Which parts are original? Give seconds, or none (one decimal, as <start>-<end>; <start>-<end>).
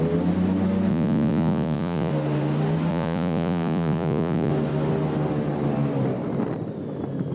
0.0-0.9; 2.1-2.9; 4.5-7.3